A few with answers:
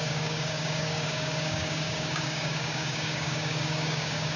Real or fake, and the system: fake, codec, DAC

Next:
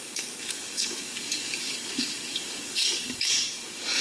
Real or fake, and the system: fake, codec, DAC